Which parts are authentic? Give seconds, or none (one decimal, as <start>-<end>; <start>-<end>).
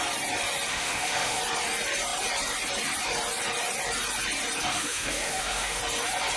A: 0.0-0.7; 1.4-4.7; 5.8-6.4